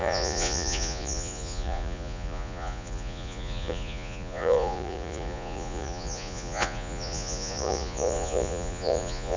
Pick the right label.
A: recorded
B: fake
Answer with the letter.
B